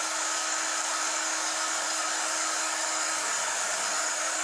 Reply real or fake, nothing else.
fake